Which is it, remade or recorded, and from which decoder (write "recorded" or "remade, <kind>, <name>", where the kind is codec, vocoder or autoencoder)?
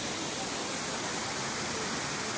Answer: recorded